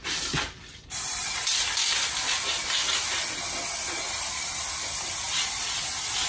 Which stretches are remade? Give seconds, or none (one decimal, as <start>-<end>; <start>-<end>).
0.0-6.3